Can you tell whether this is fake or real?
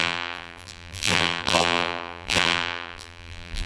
fake